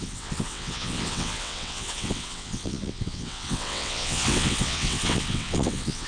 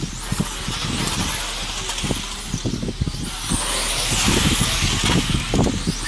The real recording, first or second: second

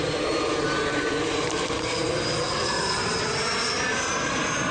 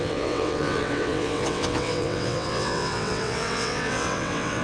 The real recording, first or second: first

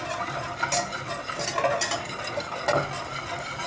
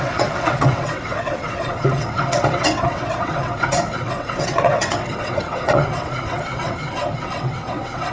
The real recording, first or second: first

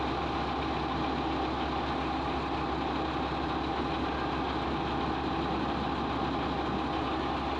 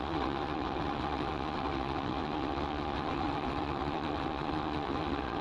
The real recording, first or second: first